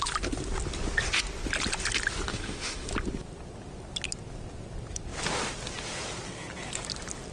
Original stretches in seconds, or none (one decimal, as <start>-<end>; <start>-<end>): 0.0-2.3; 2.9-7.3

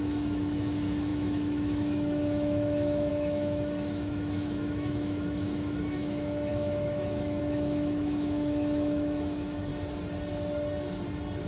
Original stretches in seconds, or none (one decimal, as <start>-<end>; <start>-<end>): 9.7-11.5

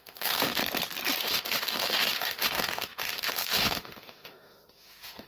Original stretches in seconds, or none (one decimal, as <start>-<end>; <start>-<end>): 0.6-1.2

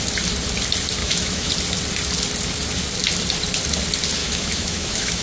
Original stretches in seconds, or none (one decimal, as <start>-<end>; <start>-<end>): 0.0-1.0; 1.5-4.2

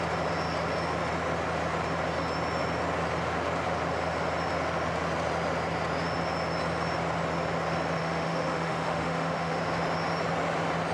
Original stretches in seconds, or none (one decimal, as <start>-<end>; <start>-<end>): 0.0-8.0; 9.6-10.9

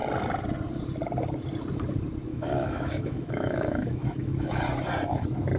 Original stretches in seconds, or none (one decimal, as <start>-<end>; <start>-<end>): 0.0-2.3; 4.6-5.6

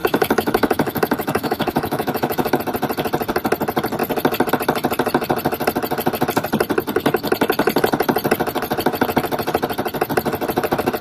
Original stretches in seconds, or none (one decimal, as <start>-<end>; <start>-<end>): 2.6-11.0

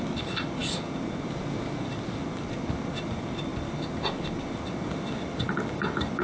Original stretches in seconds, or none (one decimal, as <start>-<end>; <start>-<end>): 0.0-6.2